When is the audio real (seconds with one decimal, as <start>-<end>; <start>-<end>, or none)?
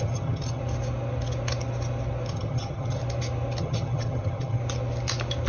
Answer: 0.6-2.3; 3.0-3.6; 4.6-5.5